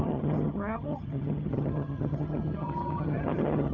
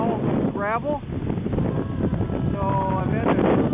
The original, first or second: second